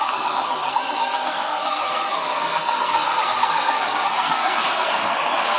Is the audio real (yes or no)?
no